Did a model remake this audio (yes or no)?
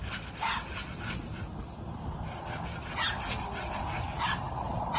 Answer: no